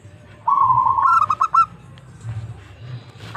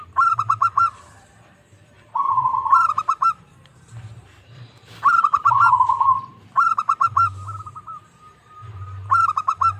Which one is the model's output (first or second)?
second